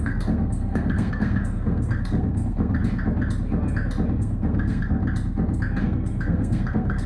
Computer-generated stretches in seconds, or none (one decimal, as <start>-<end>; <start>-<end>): 0.0-2.8; 4.2-5.0; 5.8-7.1